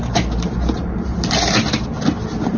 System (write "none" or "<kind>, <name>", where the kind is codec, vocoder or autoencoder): vocoder, BigVGAN v2